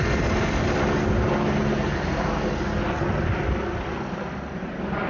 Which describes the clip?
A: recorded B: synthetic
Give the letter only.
A